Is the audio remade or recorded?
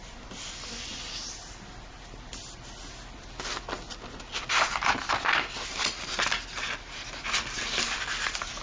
recorded